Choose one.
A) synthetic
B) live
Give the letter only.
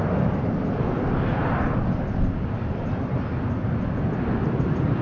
B